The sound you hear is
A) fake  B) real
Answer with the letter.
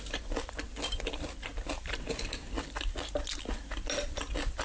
B